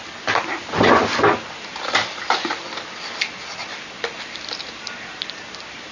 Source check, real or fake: real